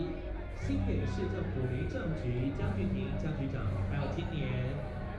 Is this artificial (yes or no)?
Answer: no